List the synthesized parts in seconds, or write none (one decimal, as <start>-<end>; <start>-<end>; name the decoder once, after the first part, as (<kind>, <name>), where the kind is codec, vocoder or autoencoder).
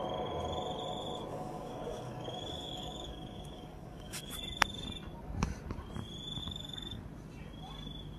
1.3-4.3 (codec, DAC); 6.4-7.0